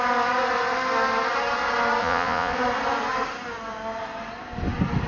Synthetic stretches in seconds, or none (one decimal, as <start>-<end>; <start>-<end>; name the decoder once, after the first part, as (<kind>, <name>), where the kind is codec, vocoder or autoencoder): 2.0-2.6 (vocoder, Vocos)